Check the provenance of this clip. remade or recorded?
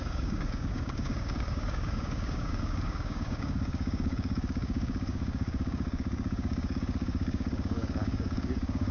remade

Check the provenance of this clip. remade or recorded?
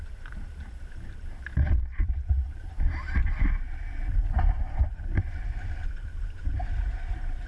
remade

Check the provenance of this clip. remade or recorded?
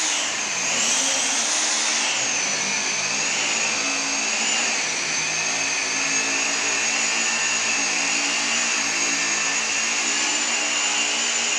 recorded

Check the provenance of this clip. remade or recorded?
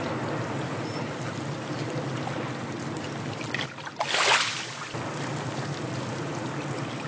recorded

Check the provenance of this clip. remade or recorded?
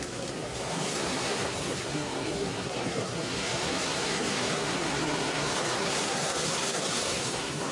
remade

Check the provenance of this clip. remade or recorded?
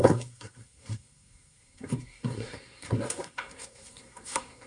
remade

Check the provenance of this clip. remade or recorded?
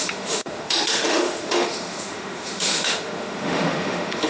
remade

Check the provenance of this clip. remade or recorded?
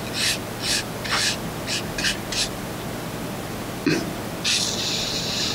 recorded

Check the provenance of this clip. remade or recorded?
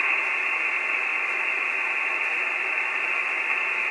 recorded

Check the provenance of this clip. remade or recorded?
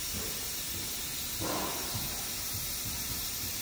recorded